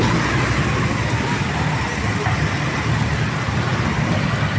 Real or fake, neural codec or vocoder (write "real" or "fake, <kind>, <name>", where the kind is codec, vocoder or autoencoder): real